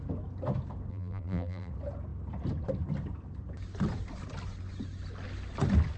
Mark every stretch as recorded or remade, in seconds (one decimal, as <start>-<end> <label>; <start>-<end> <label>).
0.0-0.9 recorded; 0.9-1.7 remade; 1.7-6.0 recorded